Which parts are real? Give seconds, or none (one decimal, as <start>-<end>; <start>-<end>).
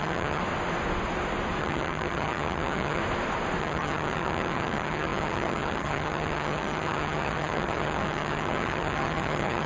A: 0.4-1.6; 3.0-3.6